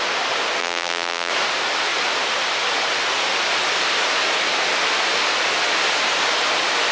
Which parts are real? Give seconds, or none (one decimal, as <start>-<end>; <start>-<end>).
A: 0.0-0.6; 1.3-6.9